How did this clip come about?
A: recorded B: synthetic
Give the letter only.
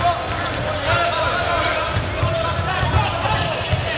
A